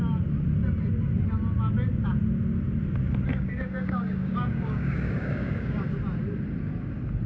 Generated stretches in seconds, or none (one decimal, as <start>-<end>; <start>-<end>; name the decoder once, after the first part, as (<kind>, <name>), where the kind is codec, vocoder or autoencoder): 3.3-5.9 (codec, DAC)